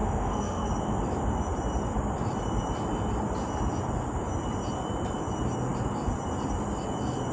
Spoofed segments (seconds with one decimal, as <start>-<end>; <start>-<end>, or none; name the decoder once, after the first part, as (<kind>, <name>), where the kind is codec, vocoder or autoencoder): 0.0-0.7 (codec, SNAC)